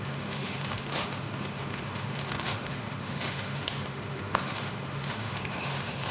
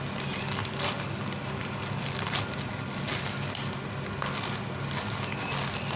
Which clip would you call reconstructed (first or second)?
first